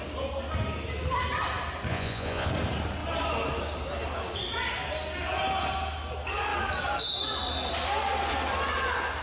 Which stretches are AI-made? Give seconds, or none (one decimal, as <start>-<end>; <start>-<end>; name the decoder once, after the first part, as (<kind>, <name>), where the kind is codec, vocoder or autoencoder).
1.9-2.5 (vocoder, Vocos)